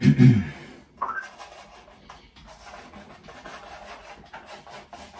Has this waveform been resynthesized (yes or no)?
no